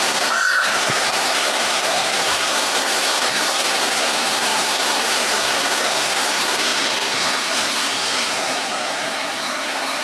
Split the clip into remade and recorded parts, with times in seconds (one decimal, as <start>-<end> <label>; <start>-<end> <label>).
0.0-10.0 remade